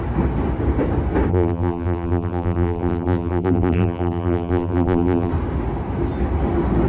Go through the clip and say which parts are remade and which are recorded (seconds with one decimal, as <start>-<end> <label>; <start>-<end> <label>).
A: 0.0-1.3 recorded; 1.3-5.3 remade; 5.3-6.9 recorded